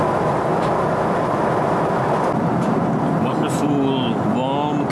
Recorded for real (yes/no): yes